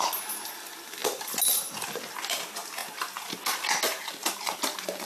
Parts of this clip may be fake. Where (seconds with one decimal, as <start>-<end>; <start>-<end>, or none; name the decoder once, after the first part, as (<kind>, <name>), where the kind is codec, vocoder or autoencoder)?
none